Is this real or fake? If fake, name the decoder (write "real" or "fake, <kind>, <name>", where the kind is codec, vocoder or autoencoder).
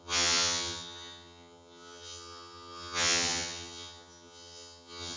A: fake, vocoder, HiFi-GAN